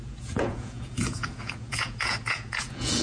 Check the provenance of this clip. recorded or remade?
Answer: remade